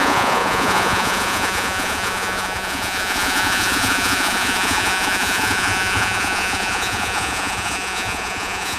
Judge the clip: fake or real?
fake